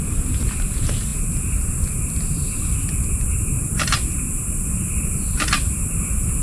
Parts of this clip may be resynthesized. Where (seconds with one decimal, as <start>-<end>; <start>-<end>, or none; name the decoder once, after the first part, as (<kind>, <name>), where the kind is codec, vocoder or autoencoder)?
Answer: none